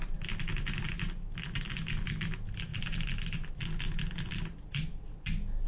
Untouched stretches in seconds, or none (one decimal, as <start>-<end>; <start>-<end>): 0.0-5.7